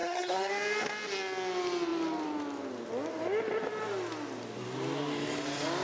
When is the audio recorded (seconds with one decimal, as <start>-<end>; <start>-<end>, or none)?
0.5-5.8